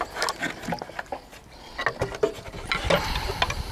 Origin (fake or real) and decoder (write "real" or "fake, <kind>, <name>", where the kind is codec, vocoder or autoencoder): real